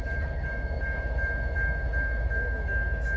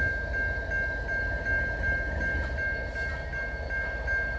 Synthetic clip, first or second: first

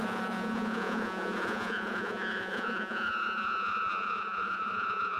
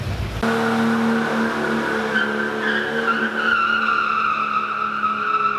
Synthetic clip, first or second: first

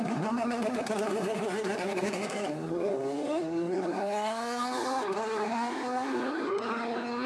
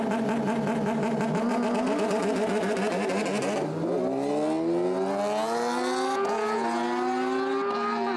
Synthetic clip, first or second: first